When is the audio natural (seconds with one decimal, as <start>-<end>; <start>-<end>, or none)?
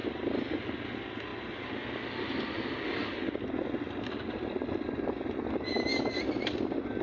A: 0.0-7.0